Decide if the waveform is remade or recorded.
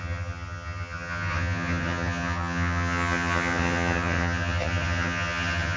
remade